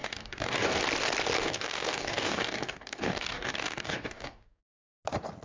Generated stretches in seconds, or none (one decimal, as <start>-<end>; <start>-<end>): 0.0-0.8; 1.4-4.6